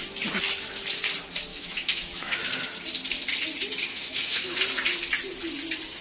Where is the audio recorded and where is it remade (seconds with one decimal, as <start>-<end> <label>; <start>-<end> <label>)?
0.0-1.5 recorded; 1.5-2.4 remade; 2.4-3.9 recorded; 3.9-4.6 remade; 4.6-6.0 recorded